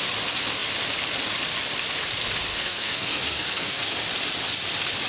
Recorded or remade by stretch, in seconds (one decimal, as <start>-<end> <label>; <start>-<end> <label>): 0.0-2.5 recorded; 2.5-3.8 remade; 3.8-5.1 recorded